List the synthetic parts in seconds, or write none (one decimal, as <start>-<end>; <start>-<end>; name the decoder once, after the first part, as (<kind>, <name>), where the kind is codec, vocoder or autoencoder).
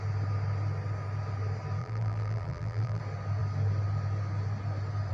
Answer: 1.8-3.0 (vocoder, BigVGAN v2)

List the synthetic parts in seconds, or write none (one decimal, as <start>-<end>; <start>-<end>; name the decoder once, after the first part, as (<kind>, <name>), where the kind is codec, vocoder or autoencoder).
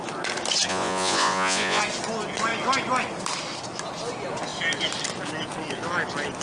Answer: 0.7-1.8 (vocoder, Vocos)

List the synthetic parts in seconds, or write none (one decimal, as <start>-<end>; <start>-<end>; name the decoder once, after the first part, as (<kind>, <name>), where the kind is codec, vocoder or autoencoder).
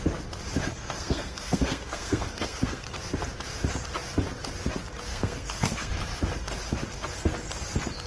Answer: 0.7-3.0 (codec, SNAC); 5.1-5.9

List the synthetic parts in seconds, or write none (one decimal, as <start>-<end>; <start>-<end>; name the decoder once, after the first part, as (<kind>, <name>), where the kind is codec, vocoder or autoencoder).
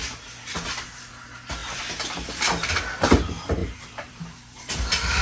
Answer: 1.6-2.3 (vocoder, BigVGAN v2); 3.6-5.2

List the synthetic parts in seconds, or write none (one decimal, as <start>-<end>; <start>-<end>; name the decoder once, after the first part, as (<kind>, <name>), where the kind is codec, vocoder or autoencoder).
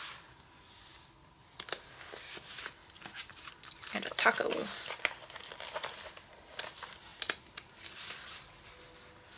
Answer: 2.8-3.5 (vocoder, BigVGAN v2)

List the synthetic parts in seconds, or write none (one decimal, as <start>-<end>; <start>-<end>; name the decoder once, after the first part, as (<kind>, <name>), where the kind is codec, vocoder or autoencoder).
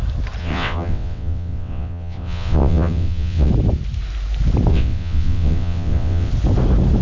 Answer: 0.4-3.5 (vocoder, WaveNeXt); 4.7-6.3